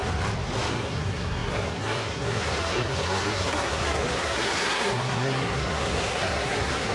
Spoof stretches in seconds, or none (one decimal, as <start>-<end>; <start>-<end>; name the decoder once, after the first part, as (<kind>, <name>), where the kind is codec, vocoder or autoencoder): 0.7-6.9 (codec, SNAC)